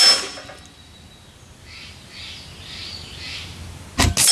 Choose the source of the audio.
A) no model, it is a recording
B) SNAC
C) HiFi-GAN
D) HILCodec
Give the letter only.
A